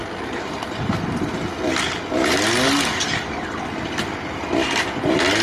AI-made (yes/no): no